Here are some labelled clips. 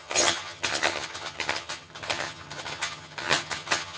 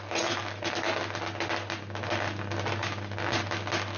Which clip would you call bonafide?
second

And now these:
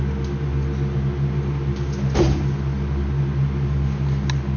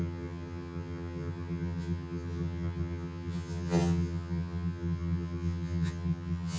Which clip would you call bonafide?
first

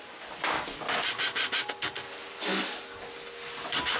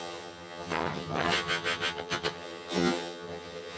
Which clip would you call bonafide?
first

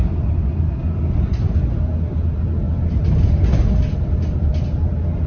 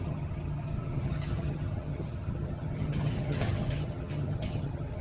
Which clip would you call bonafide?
first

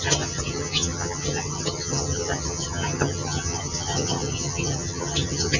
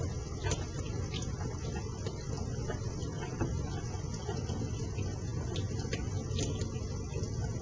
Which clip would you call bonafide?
second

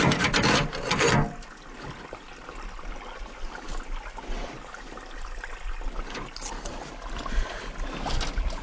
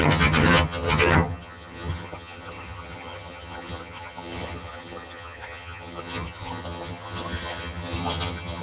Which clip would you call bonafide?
first